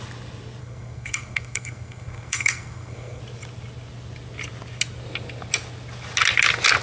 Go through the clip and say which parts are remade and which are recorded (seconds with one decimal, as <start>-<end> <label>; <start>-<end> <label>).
0.0-0.6 recorded; 0.6-3.2 remade; 3.2-6.8 recorded